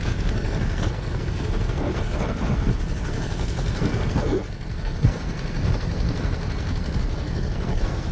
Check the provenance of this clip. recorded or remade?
remade